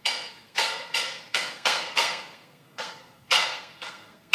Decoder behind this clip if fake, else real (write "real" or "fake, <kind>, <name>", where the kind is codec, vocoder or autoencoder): fake, codec, SNAC